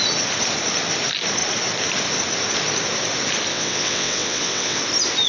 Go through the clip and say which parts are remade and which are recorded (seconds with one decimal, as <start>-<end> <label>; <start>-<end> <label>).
0.0-3.5 recorded; 3.5-4.8 remade; 4.8-5.3 recorded